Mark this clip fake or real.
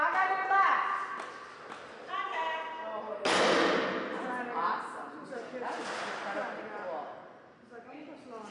real